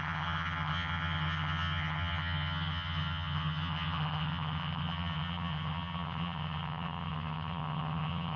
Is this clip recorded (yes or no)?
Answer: no